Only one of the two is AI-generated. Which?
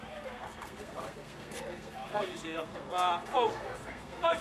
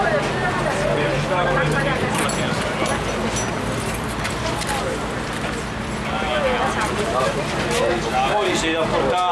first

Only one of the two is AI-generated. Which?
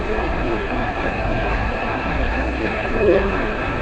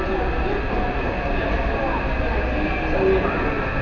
first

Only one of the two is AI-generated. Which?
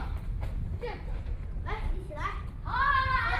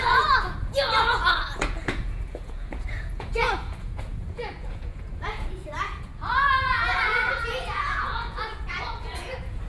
second